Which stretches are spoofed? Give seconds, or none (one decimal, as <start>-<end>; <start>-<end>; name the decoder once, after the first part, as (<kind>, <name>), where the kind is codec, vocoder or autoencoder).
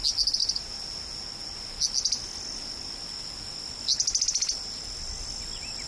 none